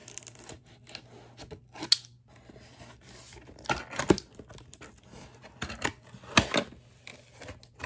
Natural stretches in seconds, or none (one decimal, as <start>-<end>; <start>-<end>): 0.0-7.9